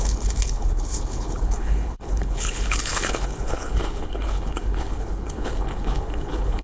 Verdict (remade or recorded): remade